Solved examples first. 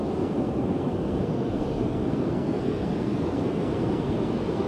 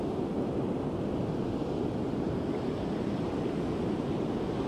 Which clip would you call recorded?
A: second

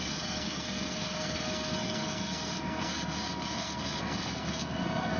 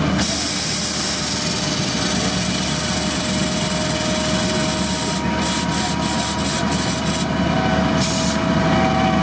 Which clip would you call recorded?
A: second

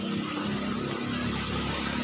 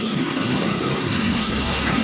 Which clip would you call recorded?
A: first